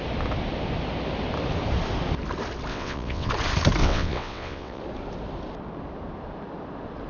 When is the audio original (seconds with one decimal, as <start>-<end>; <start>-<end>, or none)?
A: 0.0-2.7; 3.3-3.8; 4.8-7.1